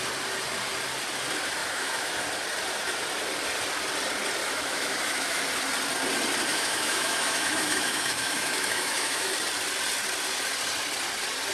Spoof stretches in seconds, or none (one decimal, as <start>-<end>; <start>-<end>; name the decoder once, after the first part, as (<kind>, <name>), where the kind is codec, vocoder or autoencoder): 1.6-2.2 (autoencoder, DAC-VAE); 4.4-5.4; 6.5-9.3